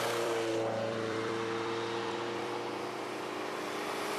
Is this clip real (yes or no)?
no